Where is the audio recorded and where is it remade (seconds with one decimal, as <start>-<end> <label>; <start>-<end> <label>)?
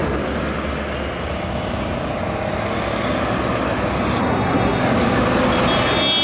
0.0-4.2 recorded; 4.2-4.8 remade; 4.8-6.2 recorded